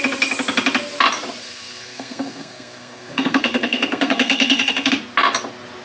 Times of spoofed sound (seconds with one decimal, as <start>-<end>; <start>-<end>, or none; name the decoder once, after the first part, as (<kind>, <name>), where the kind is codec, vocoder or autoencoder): 1.4-4.9 (codec, SNAC)